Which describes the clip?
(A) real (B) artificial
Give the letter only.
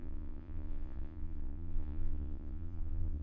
B